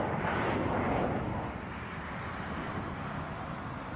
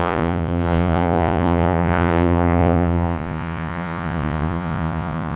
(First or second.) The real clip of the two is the first